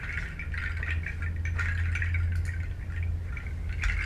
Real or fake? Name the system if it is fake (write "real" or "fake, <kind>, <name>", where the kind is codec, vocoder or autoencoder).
real